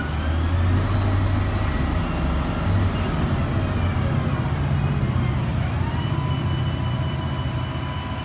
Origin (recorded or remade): recorded